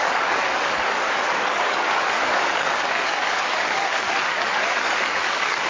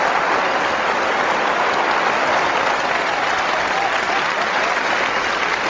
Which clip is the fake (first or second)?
first